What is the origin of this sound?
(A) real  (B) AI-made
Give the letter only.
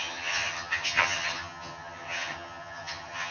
B